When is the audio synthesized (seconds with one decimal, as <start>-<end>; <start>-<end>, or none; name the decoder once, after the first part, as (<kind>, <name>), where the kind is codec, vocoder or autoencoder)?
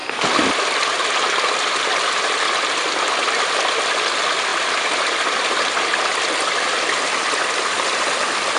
none